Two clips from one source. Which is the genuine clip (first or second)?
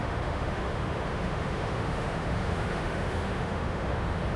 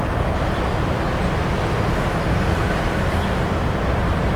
second